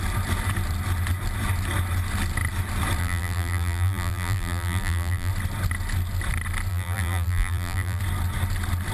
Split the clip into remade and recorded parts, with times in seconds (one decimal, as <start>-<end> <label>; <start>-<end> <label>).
0.0-3.0 recorded; 3.0-5.3 remade; 5.3-6.7 recorded; 6.7-8.0 remade; 8.0-8.9 recorded